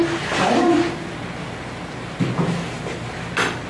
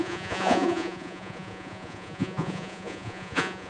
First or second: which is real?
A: first